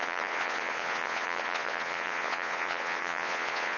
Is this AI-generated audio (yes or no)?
yes